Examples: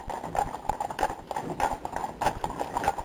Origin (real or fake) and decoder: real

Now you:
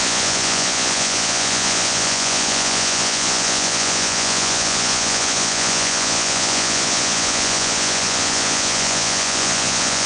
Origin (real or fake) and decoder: fake, vocoder, Vocos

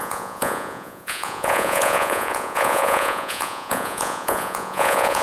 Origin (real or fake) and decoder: fake, vocoder, Vocos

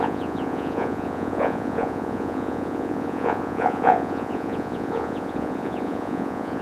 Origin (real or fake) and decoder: fake, vocoder, Vocos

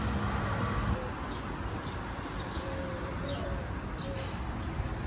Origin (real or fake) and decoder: real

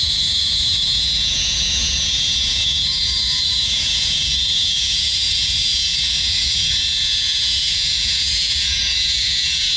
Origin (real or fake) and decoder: fake, vocoder, Vocos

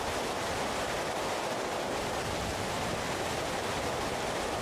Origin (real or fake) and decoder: real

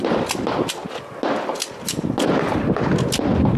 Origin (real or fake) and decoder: real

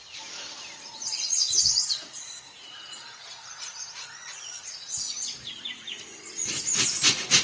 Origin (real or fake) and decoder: fake, vocoder, Vocos